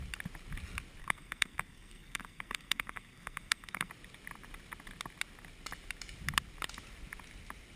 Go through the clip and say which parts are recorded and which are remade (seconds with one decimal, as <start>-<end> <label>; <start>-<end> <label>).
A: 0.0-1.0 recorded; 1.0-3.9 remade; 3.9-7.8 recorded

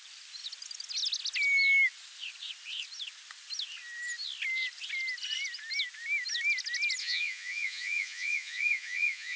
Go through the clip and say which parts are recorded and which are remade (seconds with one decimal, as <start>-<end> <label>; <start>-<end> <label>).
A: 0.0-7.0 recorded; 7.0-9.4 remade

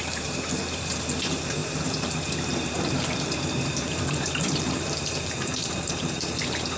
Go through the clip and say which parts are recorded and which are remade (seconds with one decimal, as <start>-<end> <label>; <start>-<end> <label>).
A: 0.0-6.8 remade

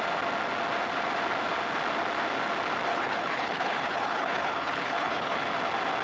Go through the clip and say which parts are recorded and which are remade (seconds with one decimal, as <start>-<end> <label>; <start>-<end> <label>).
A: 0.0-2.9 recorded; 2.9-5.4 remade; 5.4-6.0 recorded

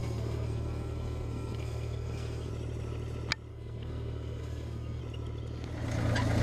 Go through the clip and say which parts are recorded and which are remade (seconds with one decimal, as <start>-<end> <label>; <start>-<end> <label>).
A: 0.0-2.5 remade; 2.5-3.5 recorded; 3.5-5.0 remade; 5.0-6.4 recorded